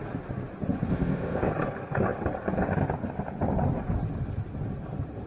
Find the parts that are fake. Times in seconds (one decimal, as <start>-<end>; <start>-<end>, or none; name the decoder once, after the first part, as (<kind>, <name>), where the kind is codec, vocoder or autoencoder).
0.9-1.5 (codec, ZipCodec)